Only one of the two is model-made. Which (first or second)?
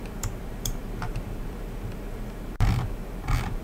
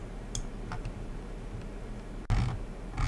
first